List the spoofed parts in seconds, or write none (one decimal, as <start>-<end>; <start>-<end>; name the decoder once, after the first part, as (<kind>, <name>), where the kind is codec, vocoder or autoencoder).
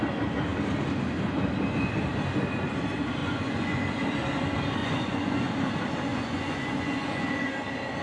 3.2-3.8 (vocoder, Vocos); 4.8-5.4; 6.1-7.5